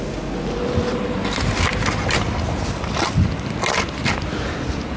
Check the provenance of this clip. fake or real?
real